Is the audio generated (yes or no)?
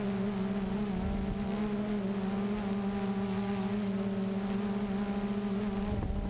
no